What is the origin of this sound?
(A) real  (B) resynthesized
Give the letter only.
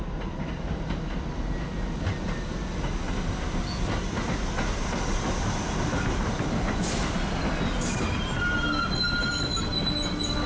A